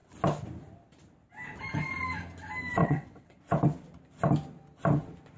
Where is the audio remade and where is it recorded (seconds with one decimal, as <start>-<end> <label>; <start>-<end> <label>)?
0.0-2.8 recorded; 2.8-3.4 remade; 3.4-5.4 recorded